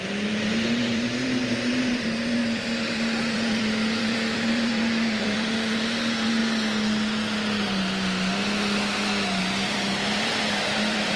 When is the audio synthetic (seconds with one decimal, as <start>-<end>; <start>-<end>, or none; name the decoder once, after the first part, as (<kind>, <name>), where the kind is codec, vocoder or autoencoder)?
0.0-6.4 (vocoder, BigVGAN v2); 9.4-11.2